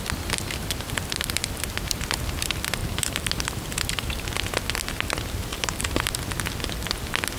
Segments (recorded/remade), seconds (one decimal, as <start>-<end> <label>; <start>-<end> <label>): 0.0-2.8 recorded; 2.8-4.3 remade; 4.3-5.5 recorded; 5.5-6.1 remade; 6.1-7.4 recorded